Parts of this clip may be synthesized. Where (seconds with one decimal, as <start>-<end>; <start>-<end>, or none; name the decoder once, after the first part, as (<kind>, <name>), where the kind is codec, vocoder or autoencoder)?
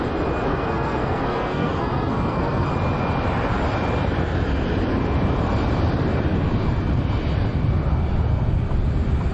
0.5-2.7 (codec, SNAC)